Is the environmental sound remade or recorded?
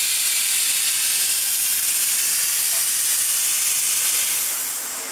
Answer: recorded